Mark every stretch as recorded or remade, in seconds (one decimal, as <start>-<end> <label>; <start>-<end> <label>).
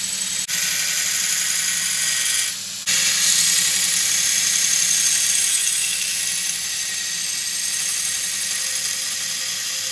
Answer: 0.0-5.5 recorded; 5.5-6.2 remade; 6.2-9.9 recorded